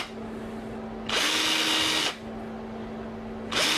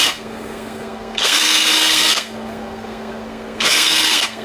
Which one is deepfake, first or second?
second